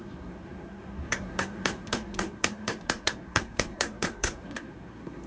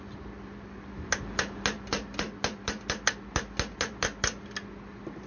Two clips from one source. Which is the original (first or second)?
second